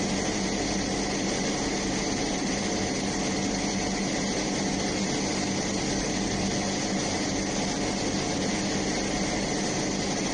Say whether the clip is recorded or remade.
recorded